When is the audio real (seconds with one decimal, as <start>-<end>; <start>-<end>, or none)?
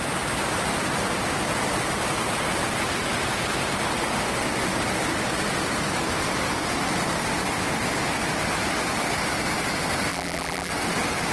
0.0-10.1; 10.7-11.3